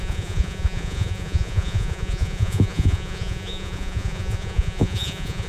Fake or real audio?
fake